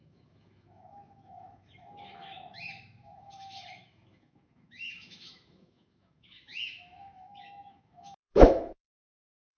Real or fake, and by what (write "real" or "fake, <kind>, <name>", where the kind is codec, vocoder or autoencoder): fake, autoencoder, DAC-VAE